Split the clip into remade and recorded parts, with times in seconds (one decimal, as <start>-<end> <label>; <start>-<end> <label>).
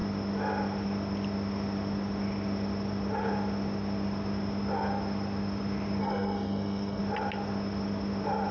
0.0-6.0 recorded; 6.0-7.0 remade; 7.0-8.5 recorded